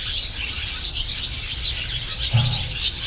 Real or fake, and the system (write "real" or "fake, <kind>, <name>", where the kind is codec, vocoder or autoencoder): real